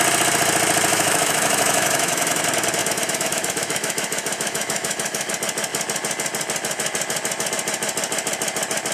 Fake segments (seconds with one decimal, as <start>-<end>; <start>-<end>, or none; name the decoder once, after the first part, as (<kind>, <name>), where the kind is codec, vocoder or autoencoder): 0.9-2.4 (autoencoder, DAC-VAE); 2.8-5.3